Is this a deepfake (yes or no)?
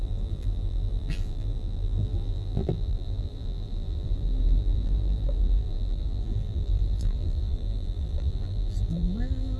yes